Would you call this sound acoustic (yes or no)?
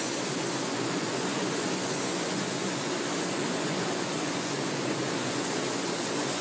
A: no